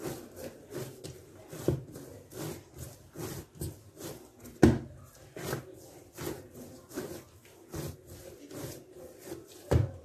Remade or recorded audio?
recorded